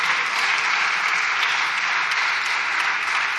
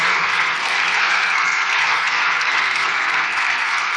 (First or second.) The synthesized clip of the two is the second